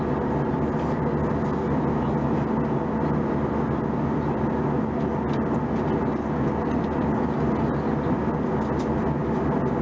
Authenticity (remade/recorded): recorded